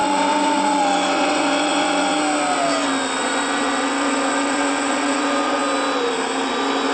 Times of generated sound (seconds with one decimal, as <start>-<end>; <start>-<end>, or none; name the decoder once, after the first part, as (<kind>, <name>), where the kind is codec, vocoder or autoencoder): 0.0-2.1 (vocoder, Vocos); 3.2-5.6